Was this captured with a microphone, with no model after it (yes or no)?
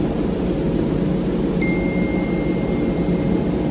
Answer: yes